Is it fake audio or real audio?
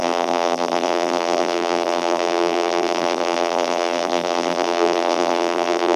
fake